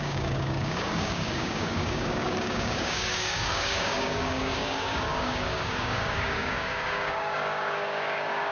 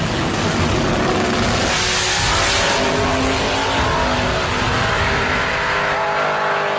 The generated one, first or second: first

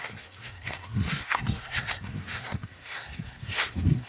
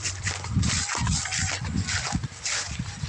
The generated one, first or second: first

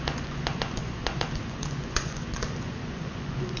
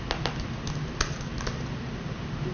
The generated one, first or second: first